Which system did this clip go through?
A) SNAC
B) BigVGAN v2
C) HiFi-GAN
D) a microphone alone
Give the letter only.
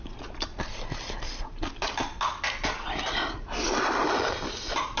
D